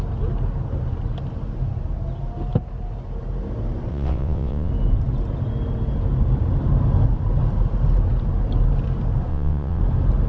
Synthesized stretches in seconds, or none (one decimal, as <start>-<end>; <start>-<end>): 3.9-4.7; 9.3-9.8